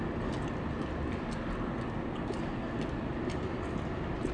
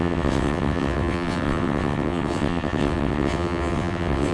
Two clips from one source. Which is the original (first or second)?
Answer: first